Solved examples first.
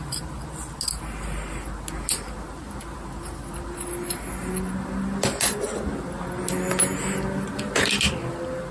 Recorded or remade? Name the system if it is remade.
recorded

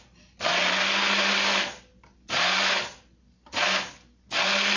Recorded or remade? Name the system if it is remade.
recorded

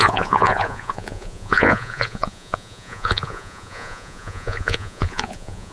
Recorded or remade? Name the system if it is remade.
remade, vocoder, Vocos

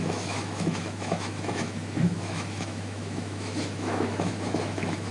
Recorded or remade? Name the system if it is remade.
remade, autoencoder, DAC-VAE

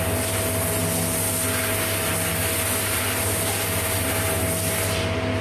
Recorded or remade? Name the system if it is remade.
recorded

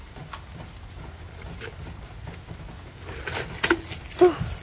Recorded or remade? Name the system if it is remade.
recorded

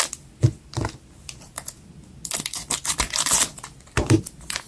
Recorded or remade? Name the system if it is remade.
recorded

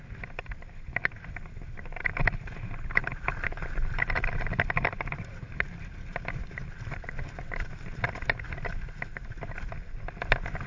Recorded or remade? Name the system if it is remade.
recorded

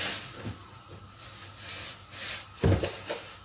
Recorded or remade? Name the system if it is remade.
recorded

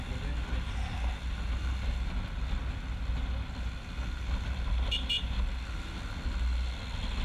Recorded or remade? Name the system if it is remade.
recorded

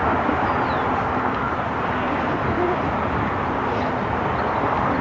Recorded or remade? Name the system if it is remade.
recorded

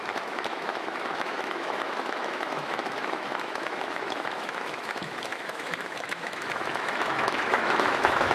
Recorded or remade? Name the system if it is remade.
remade, autoencoder, DAC-VAE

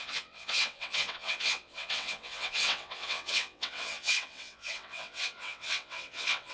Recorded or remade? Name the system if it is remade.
remade, vocoder, WaveNeXt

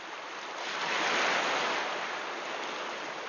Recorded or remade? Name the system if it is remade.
recorded